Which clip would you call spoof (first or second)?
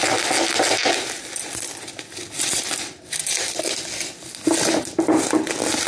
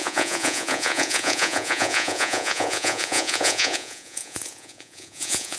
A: second